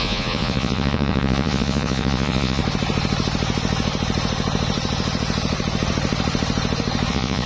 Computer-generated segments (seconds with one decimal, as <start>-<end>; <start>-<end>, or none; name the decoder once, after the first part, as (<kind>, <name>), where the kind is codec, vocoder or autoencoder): 0.0-2.6 (vocoder, Vocos); 7.1-7.5

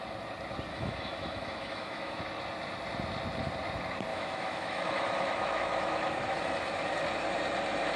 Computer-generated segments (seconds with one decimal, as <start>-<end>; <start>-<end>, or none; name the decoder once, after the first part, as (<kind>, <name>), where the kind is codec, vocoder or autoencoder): 0.7-2.2 (autoencoder, DAC-VAE); 4.1-6.3